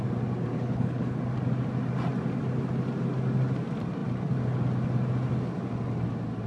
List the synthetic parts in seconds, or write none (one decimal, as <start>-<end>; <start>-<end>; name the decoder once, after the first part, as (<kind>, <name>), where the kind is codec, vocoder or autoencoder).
0.5-1.2 (codec, HILCodec)

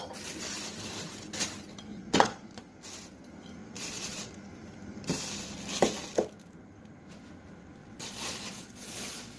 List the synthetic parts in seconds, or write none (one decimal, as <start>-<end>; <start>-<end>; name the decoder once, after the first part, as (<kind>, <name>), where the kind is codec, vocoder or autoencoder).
1.9-2.6 (vocoder, Vocos); 3.6-4.3; 7.8-9.4

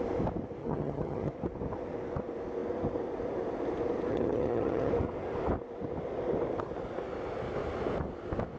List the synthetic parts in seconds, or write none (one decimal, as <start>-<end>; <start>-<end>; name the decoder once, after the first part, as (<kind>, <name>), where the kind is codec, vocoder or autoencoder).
0.6-1.3 (vocoder, HiFi-GAN); 4.1-4.9